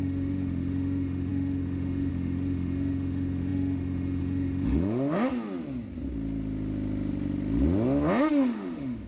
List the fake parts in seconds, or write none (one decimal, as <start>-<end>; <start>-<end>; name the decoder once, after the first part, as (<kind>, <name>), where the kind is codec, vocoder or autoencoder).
0.0-5.3 (autoencoder, DAC-VAE); 8.2-9.1